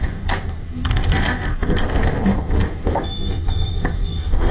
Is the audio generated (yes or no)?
yes